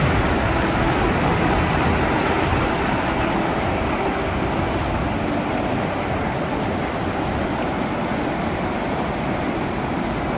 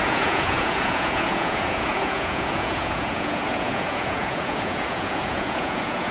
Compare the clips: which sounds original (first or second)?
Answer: first